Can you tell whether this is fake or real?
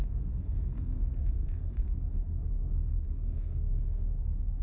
fake